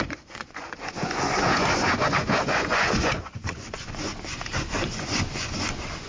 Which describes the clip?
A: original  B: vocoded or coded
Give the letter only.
B